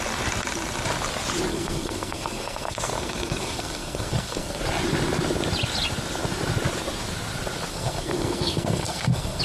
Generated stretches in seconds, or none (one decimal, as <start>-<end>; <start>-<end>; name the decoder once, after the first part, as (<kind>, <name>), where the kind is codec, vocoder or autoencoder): 1.5-4.6 (codec, SNAC); 7.7-9.4